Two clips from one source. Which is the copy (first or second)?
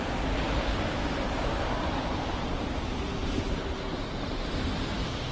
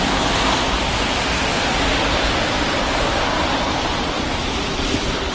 second